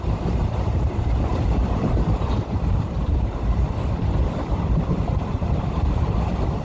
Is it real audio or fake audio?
real